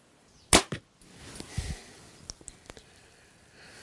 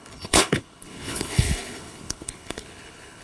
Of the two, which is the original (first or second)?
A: first